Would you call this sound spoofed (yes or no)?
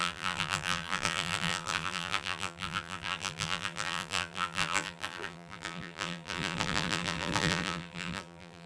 yes